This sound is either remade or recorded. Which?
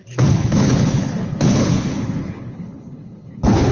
remade